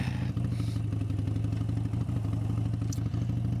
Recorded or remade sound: recorded